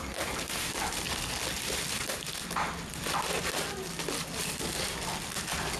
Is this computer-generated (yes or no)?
no